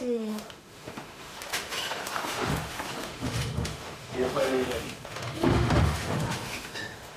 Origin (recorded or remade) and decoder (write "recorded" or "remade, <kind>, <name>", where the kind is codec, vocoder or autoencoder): remade, autoencoder, DAC-VAE